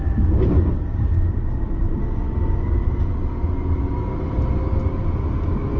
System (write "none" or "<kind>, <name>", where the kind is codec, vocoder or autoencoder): none